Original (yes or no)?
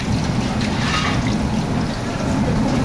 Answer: yes